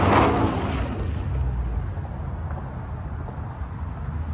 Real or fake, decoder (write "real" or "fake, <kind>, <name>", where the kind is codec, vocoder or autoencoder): real